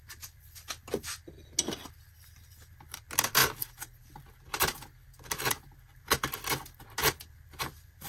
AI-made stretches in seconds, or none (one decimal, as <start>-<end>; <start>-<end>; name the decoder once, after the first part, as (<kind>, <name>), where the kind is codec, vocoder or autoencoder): none